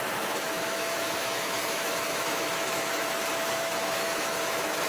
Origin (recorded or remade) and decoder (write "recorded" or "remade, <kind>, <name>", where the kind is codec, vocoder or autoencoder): remade, autoencoder, DAC-VAE